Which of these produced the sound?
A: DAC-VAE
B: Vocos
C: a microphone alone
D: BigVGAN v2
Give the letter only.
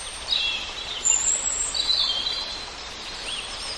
C